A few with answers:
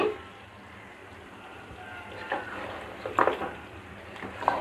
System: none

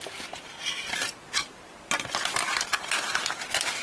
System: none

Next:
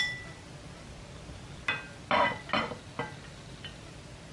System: none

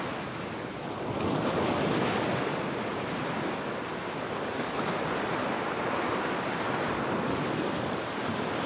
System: none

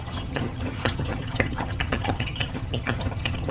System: vocoder, HiFi-GAN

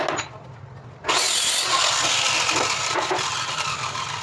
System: none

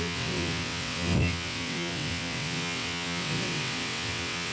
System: vocoder, WaveNeXt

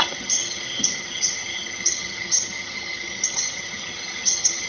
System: vocoder, HiFi-GAN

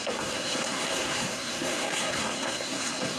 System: codec, SNAC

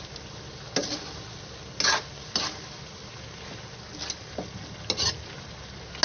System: none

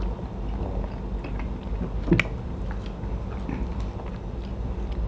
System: none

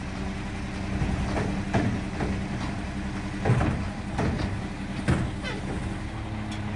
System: none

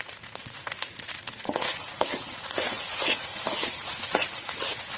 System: vocoder, Vocos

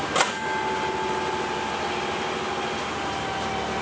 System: none